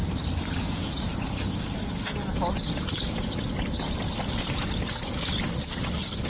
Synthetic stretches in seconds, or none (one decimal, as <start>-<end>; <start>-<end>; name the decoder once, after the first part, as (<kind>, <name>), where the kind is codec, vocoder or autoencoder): 0.0-1.2 (vocoder, BigVGAN v2)